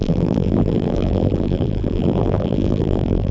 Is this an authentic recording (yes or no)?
no